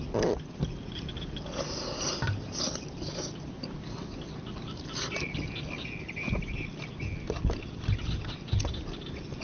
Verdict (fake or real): real